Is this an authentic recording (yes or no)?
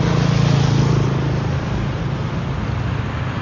yes